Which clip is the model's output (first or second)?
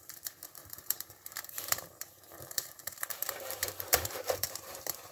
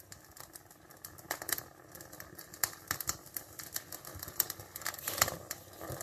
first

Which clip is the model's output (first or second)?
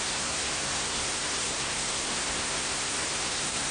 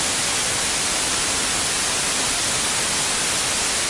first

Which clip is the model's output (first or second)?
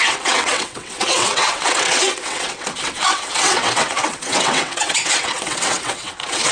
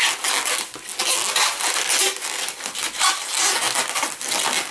first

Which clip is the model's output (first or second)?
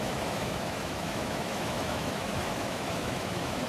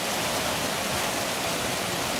first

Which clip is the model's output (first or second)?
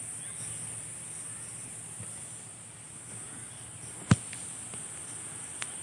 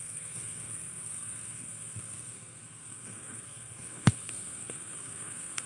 second